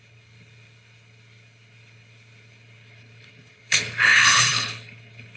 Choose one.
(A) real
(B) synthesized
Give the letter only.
B